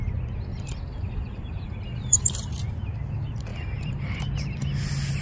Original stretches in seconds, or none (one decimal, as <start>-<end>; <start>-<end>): 0.0-0.5; 2.5-3.5; 4.2-5.2